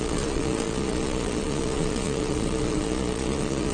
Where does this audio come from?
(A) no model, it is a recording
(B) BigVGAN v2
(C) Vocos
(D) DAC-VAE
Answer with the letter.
C